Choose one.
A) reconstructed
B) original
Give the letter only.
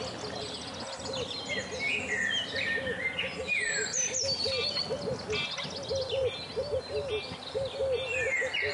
B